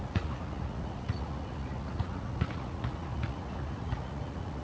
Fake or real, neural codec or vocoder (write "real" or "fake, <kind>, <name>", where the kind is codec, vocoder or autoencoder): fake, vocoder, Vocos